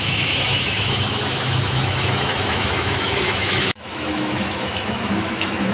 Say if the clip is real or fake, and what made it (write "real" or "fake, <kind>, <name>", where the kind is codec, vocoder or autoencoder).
fake, autoencoder, DAC-VAE